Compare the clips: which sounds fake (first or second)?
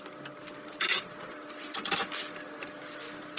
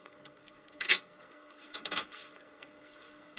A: second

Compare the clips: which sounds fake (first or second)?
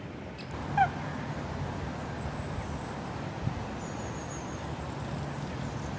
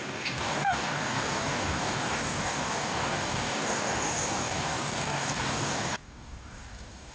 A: second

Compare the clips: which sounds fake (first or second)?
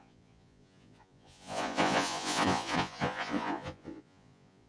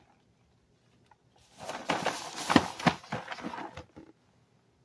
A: first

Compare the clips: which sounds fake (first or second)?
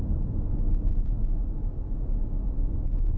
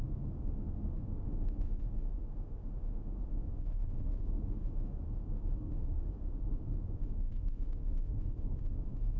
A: second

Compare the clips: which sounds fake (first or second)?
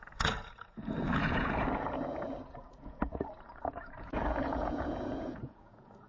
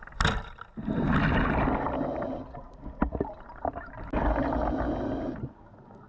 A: first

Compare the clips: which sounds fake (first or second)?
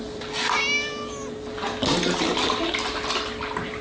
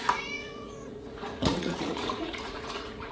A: second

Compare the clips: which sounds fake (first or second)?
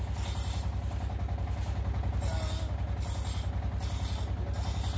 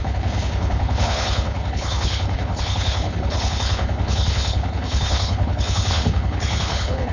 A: second